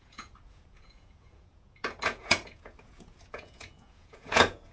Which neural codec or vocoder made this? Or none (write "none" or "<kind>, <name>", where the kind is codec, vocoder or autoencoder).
vocoder, Vocos